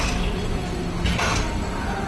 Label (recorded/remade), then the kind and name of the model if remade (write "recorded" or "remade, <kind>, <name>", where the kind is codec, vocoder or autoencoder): recorded